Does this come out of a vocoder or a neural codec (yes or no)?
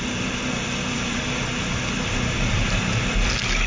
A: yes